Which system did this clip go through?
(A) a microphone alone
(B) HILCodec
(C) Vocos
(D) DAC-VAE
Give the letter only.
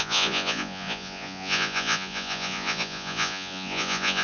C